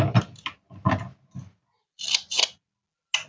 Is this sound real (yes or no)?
yes